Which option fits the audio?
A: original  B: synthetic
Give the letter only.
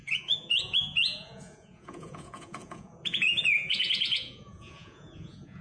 B